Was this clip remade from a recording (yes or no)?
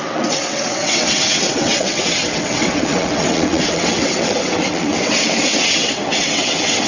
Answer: yes